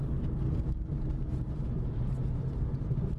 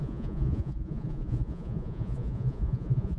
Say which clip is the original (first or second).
first